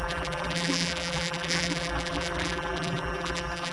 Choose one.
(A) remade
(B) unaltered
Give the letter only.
A